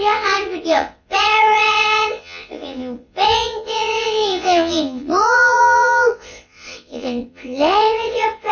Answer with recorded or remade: remade